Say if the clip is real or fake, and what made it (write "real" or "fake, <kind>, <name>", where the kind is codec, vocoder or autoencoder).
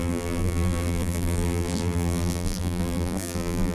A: fake, vocoder, BigVGAN v2